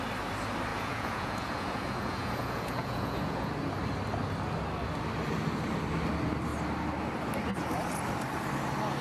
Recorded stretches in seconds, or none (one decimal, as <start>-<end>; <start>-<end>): 0.0-0.7; 3.5-9.0